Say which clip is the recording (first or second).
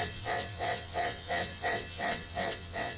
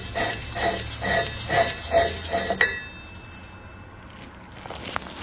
second